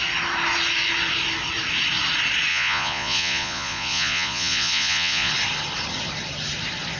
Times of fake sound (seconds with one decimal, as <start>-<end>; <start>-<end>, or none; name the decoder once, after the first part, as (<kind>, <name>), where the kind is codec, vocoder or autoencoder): 2.5-5.3 (vocoder, Vocos)